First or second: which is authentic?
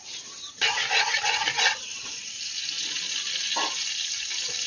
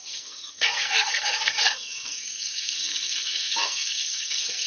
first